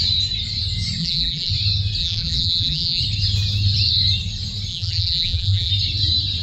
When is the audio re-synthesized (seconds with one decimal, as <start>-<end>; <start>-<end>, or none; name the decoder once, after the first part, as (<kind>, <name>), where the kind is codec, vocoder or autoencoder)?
1.0-1.5 (vocoder, BigVGAN v2); 2.0-3.0; 4.7-5.7